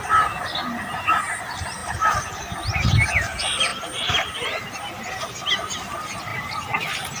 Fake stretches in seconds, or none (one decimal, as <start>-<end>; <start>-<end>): 1.8-2.4; 3.7-4.9